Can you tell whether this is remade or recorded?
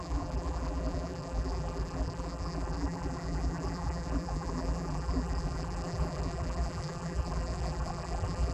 remade